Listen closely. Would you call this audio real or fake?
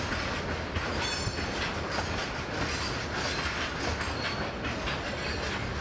real